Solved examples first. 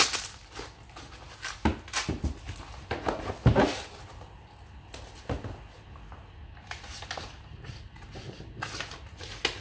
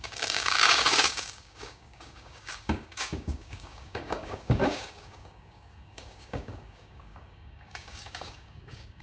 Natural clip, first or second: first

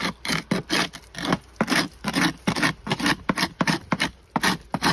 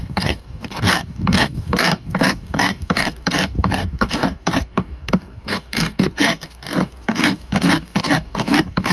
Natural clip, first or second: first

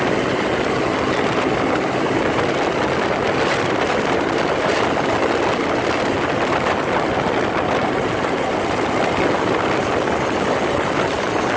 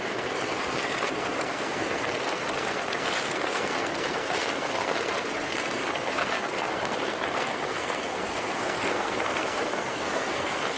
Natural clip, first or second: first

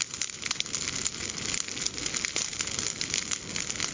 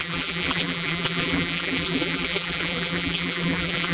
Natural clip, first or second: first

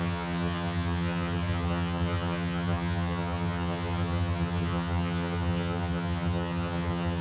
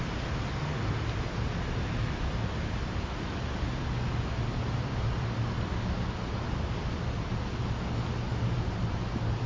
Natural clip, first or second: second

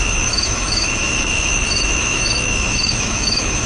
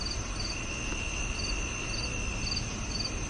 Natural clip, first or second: second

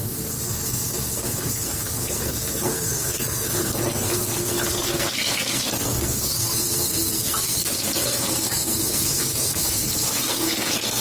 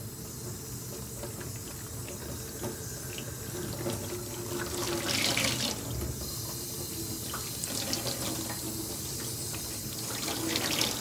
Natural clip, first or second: second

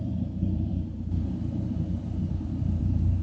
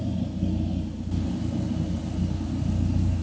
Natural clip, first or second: second